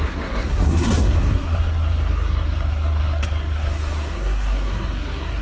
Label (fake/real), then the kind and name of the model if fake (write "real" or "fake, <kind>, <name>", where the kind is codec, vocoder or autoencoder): fake, codec, SNAC